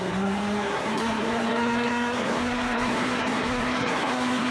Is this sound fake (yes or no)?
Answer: yes